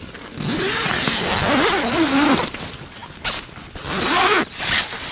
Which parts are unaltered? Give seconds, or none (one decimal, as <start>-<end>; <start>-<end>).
0.0-5.1

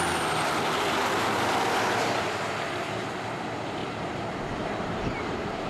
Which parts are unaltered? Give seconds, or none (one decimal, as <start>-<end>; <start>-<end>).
0.0-3.8